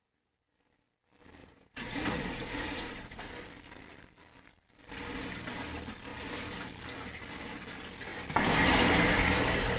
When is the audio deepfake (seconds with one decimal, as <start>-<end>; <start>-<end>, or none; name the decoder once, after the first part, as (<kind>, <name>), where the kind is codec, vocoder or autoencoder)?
1.4-3.3 (vocoder, Vocos)